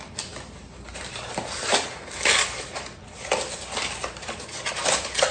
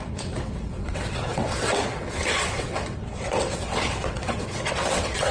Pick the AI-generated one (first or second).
second